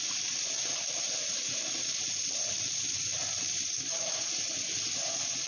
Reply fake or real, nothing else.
real